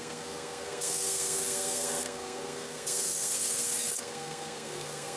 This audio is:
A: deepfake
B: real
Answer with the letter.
A